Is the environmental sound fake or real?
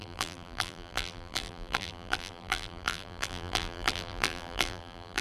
fake